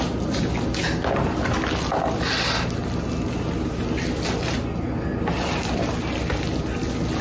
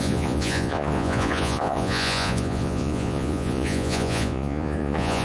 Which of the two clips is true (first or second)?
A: first